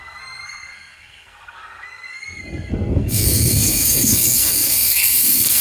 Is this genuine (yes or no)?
no